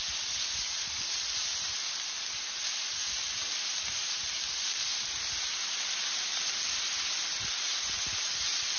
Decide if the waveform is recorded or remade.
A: recorded